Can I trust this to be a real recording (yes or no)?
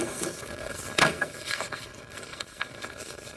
no